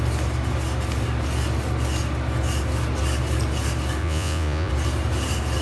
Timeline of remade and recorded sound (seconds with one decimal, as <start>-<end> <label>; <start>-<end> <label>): 0.0-4.0 recorded; 4.0-4.7 remade; 4.7-5.6 recorded